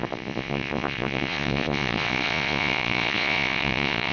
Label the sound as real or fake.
fake